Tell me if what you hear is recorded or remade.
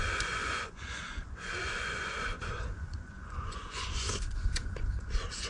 remade